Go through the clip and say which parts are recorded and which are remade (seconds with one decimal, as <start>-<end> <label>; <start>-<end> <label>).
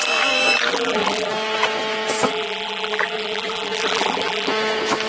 0.0-0.7 recorded; 0.7-1.3 remade; 1.3-2.3 recorded; 2.3-4.5 remade; 4.5-5.1 recorded